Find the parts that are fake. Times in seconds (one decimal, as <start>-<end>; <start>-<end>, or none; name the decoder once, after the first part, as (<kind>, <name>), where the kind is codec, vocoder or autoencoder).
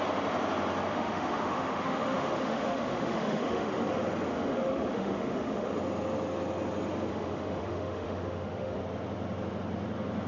0.9-3.7 (autoencoder, DAC-VAE); 4.3-5.7; 7.1-8.8